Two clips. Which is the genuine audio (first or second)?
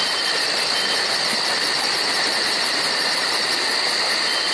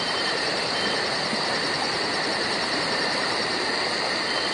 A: first